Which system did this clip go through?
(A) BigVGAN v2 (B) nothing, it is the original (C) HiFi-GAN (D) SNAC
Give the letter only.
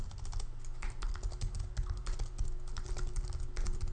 B